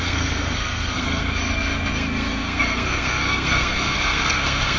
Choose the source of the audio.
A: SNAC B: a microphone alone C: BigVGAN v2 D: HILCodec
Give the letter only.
A